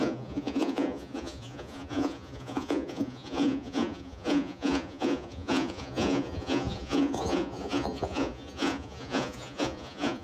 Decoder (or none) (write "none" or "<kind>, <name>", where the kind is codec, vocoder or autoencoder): vocoder, Vocos